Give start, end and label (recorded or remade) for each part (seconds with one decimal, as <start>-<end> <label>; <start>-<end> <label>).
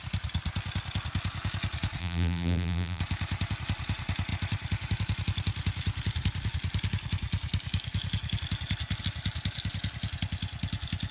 0.0-2.0 recorded; 2.0-3.0 remade; 3.0-11.1 recorded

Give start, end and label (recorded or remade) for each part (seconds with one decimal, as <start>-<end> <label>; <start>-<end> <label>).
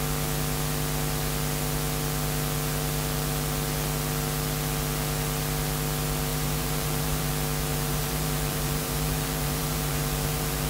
0.0-6.3 recorded; 6.3-7.3 remade; 7.3-7.7 recorded; 7.7-10.7 remade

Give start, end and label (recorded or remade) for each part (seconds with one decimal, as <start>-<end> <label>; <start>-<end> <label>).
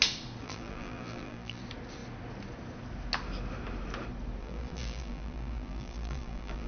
0.0-0.4 recorded; 0.4-1.6 remade; 1.6-4.4 recorded; 4.4-6.7 remade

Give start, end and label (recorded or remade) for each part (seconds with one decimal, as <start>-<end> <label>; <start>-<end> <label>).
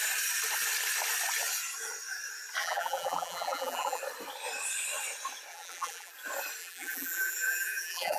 0.0-2.6 recorded; 2.6-4.0 remade; 4.0-5.5 recorded; 5.5-6.1 remade; 6.1-6.6 recorded; 6.6-8.2 remade